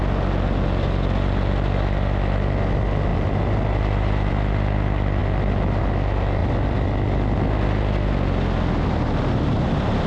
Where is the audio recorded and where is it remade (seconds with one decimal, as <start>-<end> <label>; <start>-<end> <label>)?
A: 0.0-3.1 recorded; 3.1-4.3 remade; 4.3-10.1 recorded